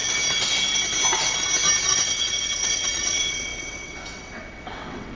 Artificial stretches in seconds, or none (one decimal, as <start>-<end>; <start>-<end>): 1.8-5.1